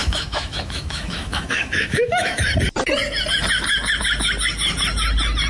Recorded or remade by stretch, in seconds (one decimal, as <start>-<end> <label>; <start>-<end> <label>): 0.0-2.5 remade; 2.5-5.5 recorded